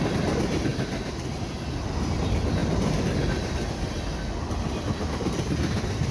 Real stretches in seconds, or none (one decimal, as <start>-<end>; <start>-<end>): 0.0-6.1